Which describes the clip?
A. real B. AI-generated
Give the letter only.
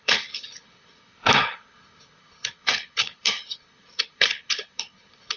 B